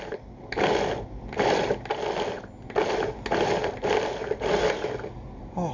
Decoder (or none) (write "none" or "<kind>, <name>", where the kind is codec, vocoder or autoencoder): none